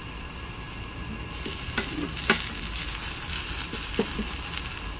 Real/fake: real